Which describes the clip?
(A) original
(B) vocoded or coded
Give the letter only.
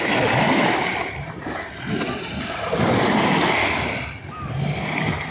A